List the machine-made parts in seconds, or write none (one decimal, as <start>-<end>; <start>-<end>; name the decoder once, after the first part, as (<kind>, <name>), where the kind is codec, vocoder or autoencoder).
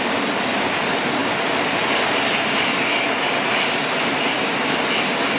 none